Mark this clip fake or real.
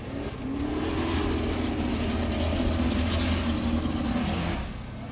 real